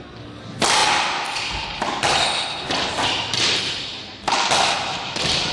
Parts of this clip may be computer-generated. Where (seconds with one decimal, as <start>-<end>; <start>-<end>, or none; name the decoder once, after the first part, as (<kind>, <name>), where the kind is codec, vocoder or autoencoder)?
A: none